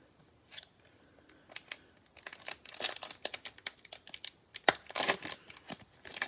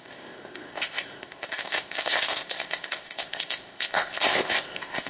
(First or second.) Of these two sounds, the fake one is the second